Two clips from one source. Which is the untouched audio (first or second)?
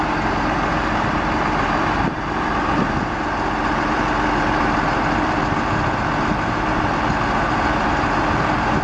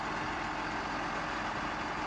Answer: second